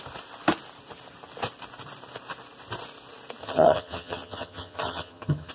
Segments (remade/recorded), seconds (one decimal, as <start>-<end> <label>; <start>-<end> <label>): 0.0-3.4 recorded; 3.4-5.5 remade